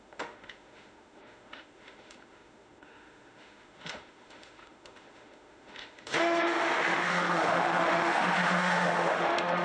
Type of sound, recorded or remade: remade